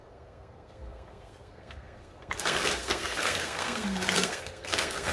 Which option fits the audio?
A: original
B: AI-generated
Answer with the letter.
B